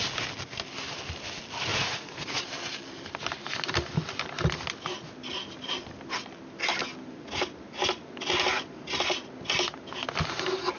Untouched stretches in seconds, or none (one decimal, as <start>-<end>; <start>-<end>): 0.0-1.7; 2.4-10.8